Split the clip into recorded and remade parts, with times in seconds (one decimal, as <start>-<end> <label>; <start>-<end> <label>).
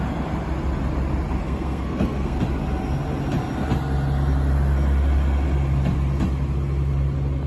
0.0-1.4 recorded; 1.4-2.4 remade; 2.4-7.5 recorded